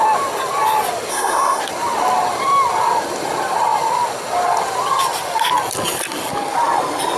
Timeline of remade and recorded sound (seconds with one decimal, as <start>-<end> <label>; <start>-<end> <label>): 0.0-1.1 recorded; 1.1-1.6 remade; 1.6-7.2 recorded